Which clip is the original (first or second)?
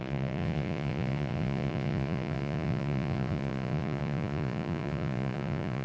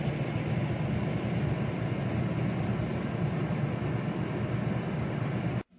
second